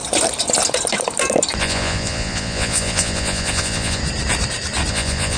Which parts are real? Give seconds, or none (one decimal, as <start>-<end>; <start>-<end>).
0.0-1.6; 4.0-4.9